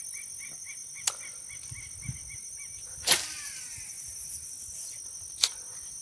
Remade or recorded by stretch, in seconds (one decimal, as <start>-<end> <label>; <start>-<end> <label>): 0.0-6.0 recorded